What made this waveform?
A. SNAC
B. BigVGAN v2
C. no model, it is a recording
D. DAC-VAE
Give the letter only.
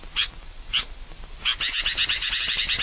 C